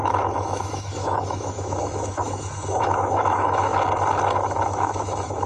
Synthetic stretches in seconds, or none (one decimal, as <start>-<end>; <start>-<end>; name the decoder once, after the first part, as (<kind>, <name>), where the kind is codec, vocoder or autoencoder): 0.0-3.7 (autoencoder, DAC-VAE); 4.6-5.5